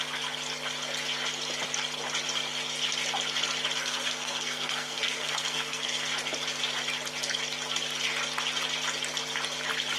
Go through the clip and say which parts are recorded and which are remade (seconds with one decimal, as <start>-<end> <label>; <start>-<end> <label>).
0.0-3.8 recorded; 3.8-6.1 remade; 6.1-10.0 recorded